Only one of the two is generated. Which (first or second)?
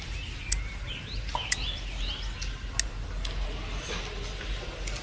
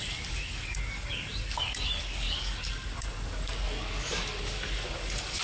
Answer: second